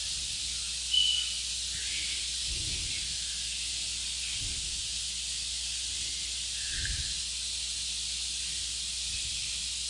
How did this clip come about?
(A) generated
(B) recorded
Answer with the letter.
B